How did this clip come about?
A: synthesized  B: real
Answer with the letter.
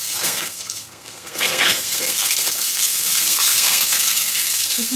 A